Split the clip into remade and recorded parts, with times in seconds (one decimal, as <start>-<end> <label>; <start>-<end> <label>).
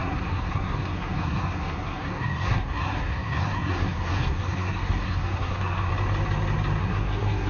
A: 0.0-5.9 remade; 5.9-6.8 recorded; 6.8-7.5 remade